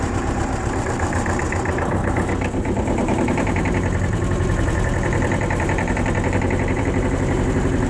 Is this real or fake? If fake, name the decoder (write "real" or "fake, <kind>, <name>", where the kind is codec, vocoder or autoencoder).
fake, vocoder, BigVGAN v2